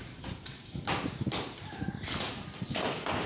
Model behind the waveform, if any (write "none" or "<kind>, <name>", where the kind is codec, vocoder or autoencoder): none